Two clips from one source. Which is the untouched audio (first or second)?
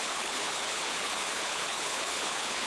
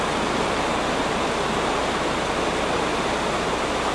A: second